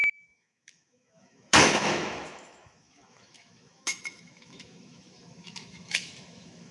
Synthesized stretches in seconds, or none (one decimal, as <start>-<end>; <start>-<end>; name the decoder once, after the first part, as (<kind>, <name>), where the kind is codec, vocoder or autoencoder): 0.0-6.7 (autoencoder, DAC-VAE)